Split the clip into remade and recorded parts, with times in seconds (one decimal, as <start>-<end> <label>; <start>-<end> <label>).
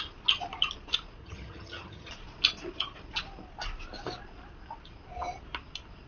0.0-1.2 recorded; 1.2-2.1 remade; 2.1-6.1 recorded